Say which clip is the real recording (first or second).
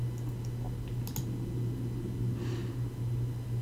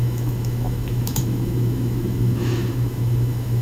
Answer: first